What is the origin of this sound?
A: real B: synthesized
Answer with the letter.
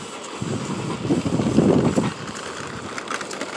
A